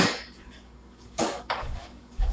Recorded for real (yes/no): no